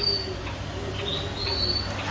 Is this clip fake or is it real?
real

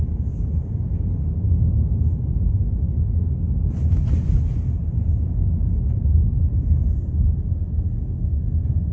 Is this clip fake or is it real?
real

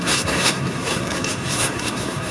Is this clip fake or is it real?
fake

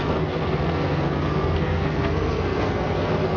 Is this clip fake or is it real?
fake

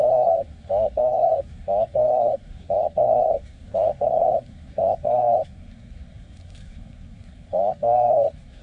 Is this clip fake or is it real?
fake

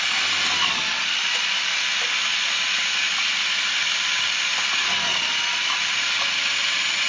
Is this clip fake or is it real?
real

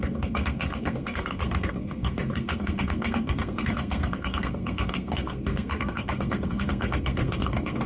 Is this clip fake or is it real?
fake